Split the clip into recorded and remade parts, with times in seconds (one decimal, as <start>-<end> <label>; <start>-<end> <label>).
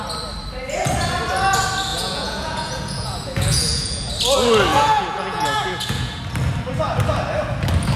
0.0-1.9 recorded; 1.9-4.1 remade; 4.1-4.7 recorded; 4.7-6.2 remade; 6.2-8.0 recorded